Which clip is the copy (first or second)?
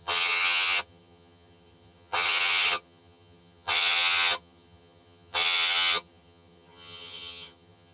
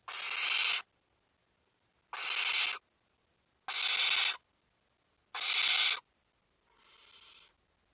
first